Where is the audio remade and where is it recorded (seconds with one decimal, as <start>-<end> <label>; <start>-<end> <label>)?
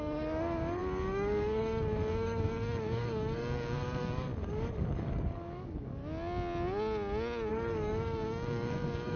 0.0-6.0 remade; 6.0-7.5 recorded; 7.5-9.2 remade